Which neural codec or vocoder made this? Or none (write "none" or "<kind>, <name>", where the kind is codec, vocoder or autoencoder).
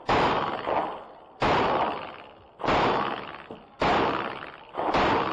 none